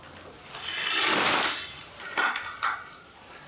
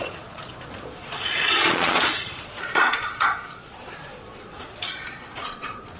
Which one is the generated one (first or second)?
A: second